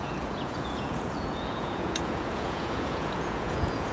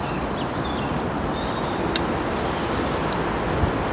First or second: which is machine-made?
first